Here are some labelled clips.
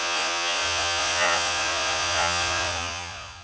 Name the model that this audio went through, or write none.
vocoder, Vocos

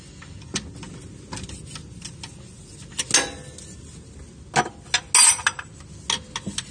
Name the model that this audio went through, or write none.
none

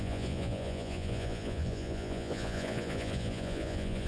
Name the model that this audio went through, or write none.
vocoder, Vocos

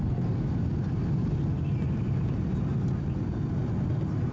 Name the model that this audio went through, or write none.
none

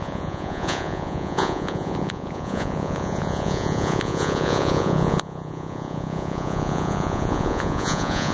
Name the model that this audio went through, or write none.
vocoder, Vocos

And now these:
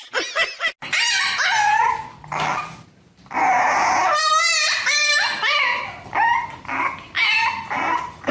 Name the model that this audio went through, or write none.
none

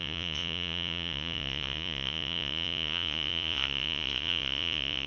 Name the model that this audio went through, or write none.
vocoder, Vocos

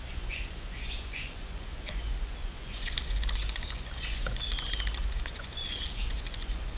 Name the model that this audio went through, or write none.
vocoder, Vocos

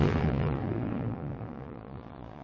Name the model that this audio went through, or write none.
vocoder, Vocos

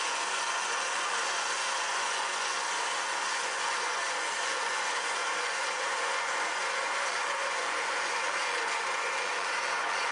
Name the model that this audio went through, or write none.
vocoder, Vocos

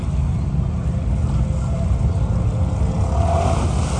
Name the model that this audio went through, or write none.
none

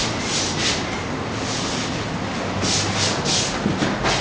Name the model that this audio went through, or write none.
none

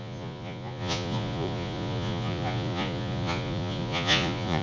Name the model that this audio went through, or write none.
vocoder, Vocos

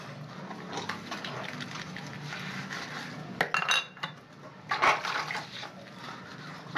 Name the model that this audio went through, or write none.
none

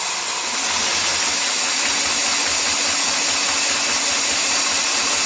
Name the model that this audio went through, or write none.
none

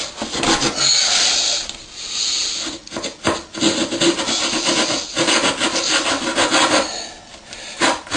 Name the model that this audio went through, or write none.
none